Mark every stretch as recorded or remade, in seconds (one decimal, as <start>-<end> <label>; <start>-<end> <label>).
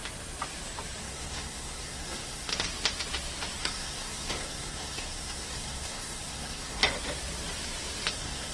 0.0-1.0 recorded; 1.0-2.5 remade; 2.5-3.6 recorded; 3.6-6.8 remade; 6.8-8.1 recorded; 8.1-8.5 remade